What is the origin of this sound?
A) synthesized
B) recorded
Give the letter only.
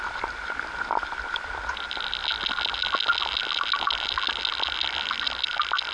B